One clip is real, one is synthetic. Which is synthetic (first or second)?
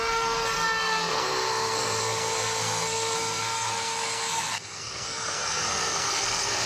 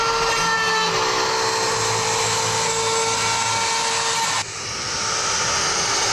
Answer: first